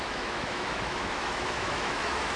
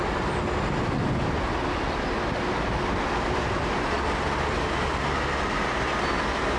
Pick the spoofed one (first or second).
first